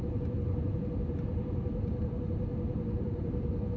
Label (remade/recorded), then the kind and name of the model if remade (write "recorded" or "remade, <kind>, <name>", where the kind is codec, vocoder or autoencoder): remade, vocoder, BigVGAN v2